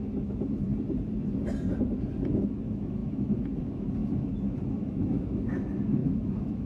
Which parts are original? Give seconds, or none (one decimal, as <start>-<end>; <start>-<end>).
0.7-2.3